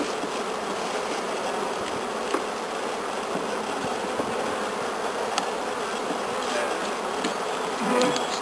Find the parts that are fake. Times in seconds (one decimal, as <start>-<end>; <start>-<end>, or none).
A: none